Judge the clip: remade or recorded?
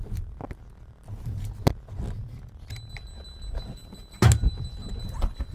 recorded